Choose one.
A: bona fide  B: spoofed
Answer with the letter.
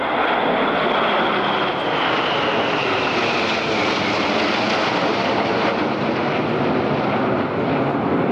A